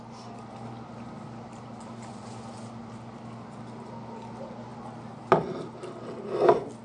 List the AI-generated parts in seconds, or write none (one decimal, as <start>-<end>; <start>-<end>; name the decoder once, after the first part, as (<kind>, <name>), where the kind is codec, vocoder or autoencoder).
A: none